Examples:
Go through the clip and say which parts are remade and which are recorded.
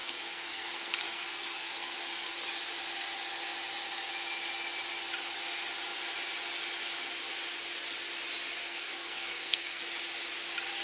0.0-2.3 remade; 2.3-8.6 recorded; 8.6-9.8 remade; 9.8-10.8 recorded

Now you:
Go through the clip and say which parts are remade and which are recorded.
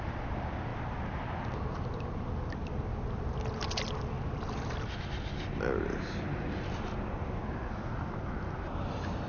0.0-9.3 recorded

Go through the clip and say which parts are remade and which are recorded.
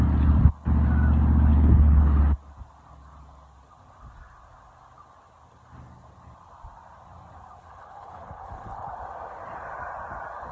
0.0-1.5 recorded; 1.5-2.2 remade; 2.2-7.6 recorded; 7.6-8.9 remade; 8.9-10.5 recorded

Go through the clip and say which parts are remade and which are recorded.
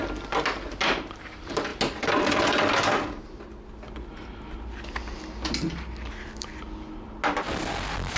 0.0-8.2 recorded